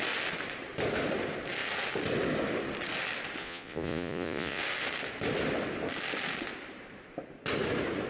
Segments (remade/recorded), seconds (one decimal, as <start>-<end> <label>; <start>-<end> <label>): 0.0-3.4 recorded; 3.4-4.6 remade; 4.6-8.1 recorded